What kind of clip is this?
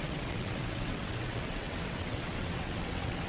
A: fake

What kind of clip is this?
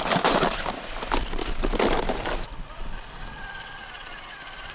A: real